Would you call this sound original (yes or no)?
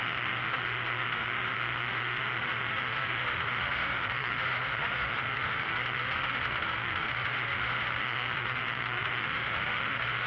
no